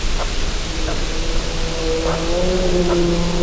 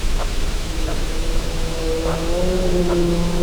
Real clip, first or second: first